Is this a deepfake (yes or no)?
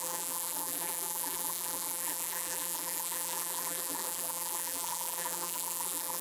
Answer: yes